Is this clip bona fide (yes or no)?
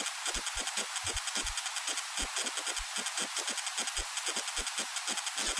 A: yes